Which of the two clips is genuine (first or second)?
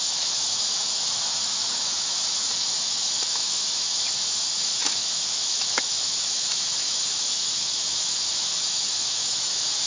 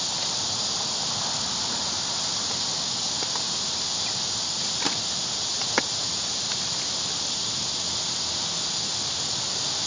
second